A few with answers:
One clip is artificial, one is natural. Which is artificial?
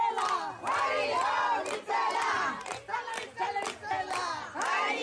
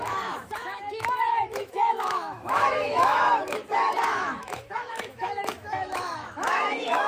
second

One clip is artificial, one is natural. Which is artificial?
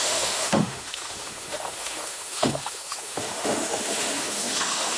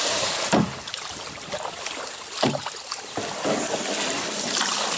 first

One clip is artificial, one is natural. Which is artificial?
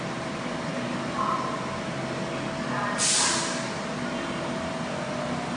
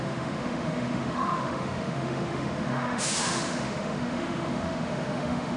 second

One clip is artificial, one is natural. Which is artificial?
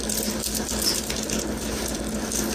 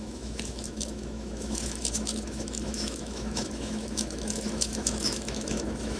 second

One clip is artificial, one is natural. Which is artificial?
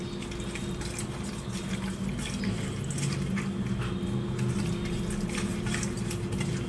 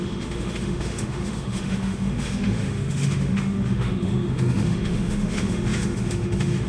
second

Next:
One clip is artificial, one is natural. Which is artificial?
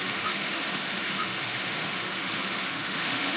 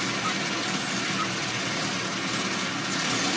first